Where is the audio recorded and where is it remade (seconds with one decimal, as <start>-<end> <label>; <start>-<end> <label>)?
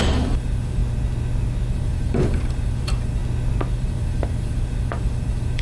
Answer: 0.0-0.8 remade; 0.8-1.7 recorded; 1.7-3.2 remade; 3.2-3.7 recorded; 3.7-5.6 remade